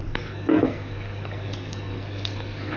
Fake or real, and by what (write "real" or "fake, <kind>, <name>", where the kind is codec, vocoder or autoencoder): fake, codec, SNAC